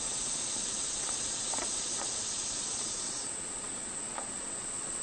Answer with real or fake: fake